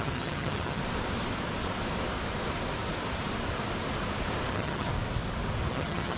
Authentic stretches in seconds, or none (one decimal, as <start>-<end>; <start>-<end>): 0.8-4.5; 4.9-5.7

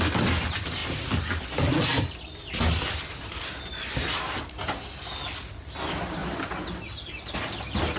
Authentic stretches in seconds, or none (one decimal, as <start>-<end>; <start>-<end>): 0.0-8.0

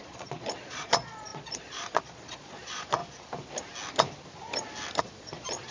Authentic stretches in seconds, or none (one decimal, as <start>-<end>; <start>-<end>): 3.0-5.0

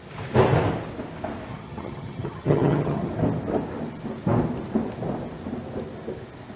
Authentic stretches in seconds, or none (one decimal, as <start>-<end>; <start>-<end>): 0.0-1.5; 3.1-6.6

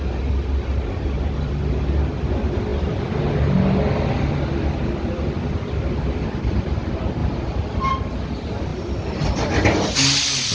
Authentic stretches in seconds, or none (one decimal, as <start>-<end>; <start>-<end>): 0.0-2.7; 3.2-7.2; 7.9-10.5